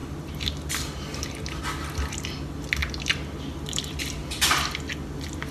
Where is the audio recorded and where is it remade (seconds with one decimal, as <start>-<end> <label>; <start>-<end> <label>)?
0.0-4.2 recorded; 4.2-4.7 remade; 4.7-5.5 recorded